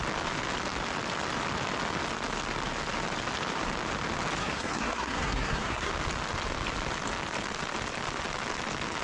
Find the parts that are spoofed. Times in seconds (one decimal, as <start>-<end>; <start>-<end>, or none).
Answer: 4.4-5.9